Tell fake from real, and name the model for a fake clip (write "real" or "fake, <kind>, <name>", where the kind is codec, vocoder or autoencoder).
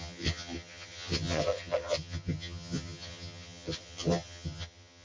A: fake, vocoder, HiFi-GAN